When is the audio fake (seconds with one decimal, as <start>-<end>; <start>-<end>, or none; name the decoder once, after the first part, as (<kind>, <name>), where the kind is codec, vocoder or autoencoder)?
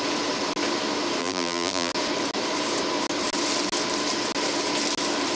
1.2-1.9 (vocoder, BigVGAN v2)